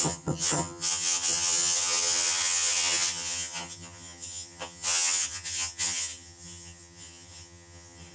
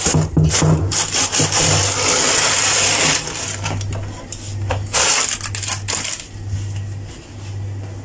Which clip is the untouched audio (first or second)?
second